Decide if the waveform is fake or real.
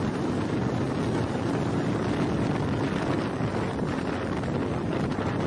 real